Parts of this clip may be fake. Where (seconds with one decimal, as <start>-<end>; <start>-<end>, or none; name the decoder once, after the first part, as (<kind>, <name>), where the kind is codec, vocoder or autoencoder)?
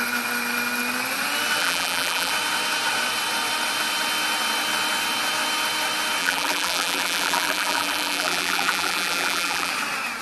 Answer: 1.6-2.3 (vocoder, BigVGAN v2); 6.2-9.7